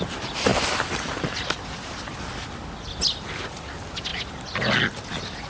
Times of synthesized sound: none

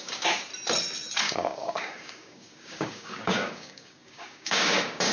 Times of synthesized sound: 0.0-0.5 (codec, DAC); 1.2-5.1

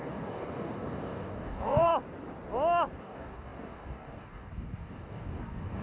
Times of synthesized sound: 0.0-1.9 (codec, DAC); 3.0-5.8

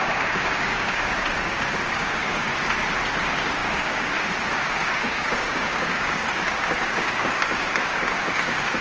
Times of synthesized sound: 0.0-2.5 (codec, DAC); 3.2-8.8

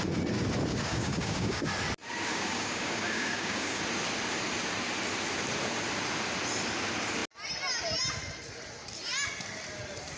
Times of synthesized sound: 0.7-1.7 (codec, DAC); 2.3-3.8